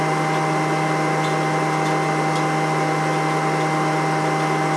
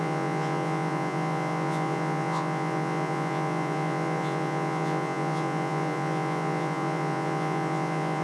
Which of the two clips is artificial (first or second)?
second